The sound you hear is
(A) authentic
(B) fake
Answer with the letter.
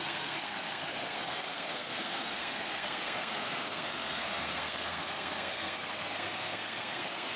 B